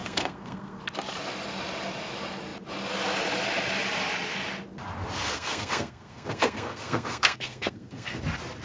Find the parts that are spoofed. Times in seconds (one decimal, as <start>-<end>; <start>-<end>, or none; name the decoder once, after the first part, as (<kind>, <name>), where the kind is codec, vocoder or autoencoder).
0.0-0.8 (codec, SNAC); 5.3-8.2